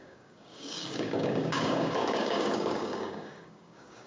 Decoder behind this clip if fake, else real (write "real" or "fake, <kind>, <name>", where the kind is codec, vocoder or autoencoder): fake, codec, DAC